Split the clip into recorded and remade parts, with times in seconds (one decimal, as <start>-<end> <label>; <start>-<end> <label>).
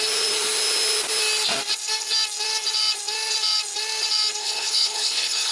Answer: 0.0-4.4 recorded; 4.4-5.5 remade